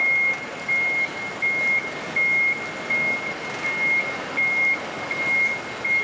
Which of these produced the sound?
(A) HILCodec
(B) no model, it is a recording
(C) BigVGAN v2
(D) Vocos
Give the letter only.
B